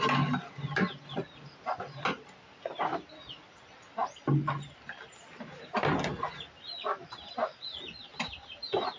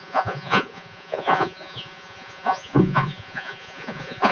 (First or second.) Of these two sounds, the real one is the first